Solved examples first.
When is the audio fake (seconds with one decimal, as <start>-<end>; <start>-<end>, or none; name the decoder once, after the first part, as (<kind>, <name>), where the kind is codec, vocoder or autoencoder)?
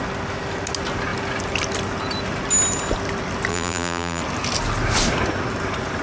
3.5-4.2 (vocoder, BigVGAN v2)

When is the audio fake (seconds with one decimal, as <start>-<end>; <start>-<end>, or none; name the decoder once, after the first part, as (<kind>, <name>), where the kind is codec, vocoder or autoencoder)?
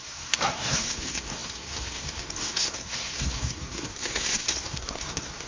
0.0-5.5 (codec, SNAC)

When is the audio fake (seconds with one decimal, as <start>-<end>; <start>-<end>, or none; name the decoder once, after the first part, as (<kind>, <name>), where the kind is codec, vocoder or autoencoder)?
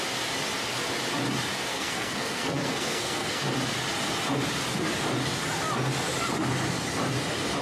1.7-3.4 (codec, SNAC)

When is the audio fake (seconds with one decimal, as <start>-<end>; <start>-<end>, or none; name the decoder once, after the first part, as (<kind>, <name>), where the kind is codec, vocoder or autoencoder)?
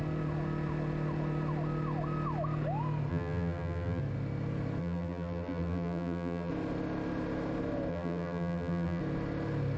3.1-4.0 (vocoder, BigVGAN v2); 4.8-6.5; 7.9-9.0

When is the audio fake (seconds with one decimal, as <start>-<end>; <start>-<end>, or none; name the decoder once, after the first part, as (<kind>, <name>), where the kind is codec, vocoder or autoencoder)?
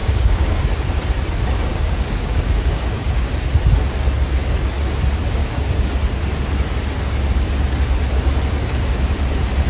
0.0-0.6 (codec, DAC); 1.7-3.3; 5.4-5.9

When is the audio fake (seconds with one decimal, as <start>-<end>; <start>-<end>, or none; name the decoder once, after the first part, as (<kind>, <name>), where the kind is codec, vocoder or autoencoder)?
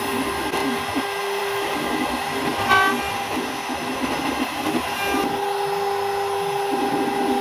none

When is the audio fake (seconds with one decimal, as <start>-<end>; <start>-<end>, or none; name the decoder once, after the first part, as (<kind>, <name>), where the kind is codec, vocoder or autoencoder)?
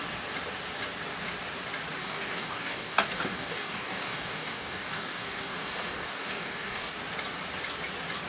2.0-6.9 (codec, DAC)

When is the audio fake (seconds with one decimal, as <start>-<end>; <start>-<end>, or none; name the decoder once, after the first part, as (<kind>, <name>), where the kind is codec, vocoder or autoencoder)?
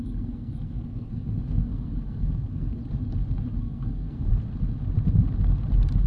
0.0-2.8 (codec, SNAC); 3.6-4.3